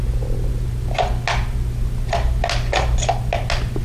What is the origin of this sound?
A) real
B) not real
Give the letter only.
A